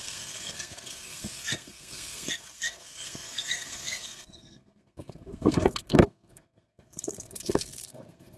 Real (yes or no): no